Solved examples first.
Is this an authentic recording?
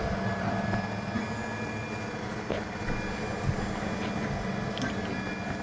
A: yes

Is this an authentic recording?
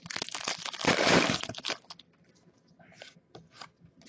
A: yes